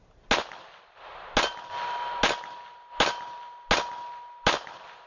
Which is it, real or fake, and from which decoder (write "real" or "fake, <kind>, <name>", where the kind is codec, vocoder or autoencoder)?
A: real